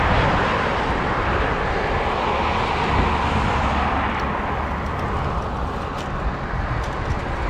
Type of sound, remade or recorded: recorded